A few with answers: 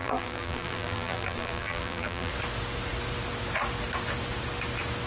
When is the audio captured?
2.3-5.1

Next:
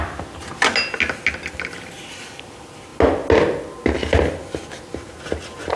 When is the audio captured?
0.0-5.8

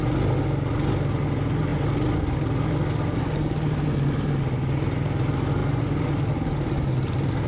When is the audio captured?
0.0-5.6; 6.1-7.5

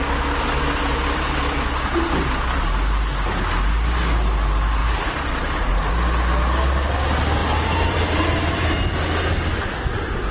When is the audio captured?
0.0-4.8; 5.9-7.4; 8.8-10.3

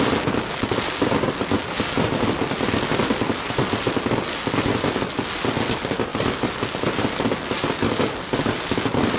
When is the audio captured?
0.0-9.2

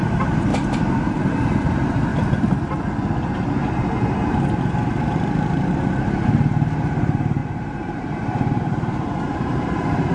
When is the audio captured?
2.1-4.6